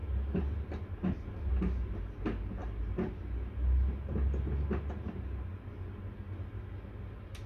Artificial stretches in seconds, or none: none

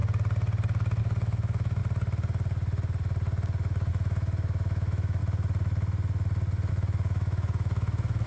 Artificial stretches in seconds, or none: 1.0-1.8 (autoencoder, DAC-VAE); 3.9-5.2; 6.7-8.3